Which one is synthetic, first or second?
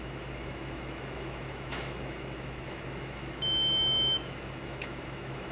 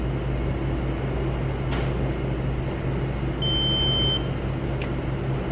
first